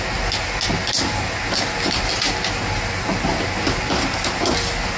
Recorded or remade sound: recorded